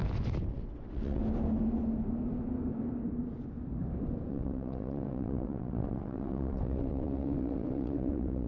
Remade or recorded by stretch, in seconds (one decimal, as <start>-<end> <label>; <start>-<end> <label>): 0.0-0.5 recorded; 0.5-1.2 remade; 1.2-4.3 recorded; 4.3-8.5 remade